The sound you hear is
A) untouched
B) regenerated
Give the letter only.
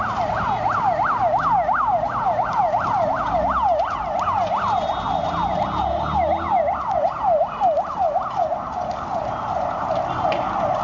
A